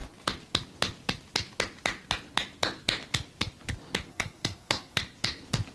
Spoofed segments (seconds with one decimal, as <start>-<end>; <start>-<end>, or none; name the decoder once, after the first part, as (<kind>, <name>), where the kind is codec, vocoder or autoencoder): 4.1-5.0 (codec, SNAC)